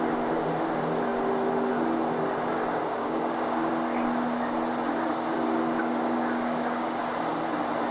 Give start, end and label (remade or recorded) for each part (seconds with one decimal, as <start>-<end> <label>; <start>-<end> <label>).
0.0-3.0 recorded; 3.0-3.7 remade; 3.7-5.8 recorded; 5.8-7.0 remade; 7.0-7.9 recorded